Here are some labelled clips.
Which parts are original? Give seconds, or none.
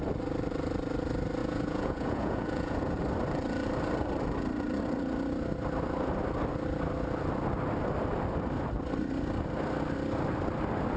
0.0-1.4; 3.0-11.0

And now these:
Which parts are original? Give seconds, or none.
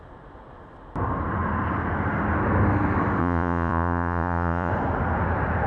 0.0-3.2; 4.7-5.7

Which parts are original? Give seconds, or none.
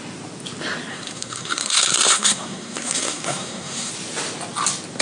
0.0-0.9; 3.9-5.0